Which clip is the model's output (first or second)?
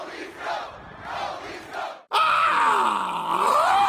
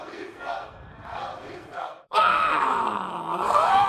second